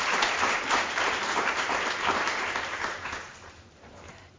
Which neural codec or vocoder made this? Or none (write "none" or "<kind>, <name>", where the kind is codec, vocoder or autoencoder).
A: vocoder, BigVGAN v2